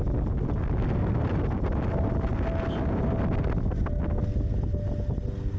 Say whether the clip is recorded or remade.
recorded